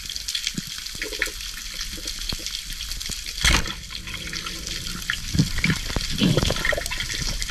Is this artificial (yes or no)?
no